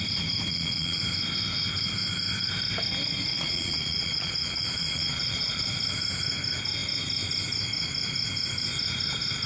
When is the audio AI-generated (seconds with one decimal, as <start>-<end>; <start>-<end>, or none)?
0.5-1.0; 3.3-5.6